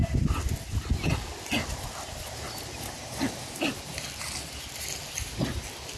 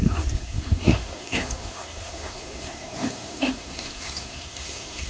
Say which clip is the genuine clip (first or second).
first